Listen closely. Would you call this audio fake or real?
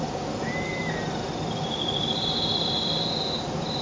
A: real